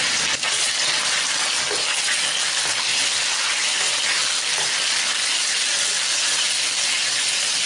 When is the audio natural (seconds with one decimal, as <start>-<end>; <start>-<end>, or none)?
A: 0.0-7.7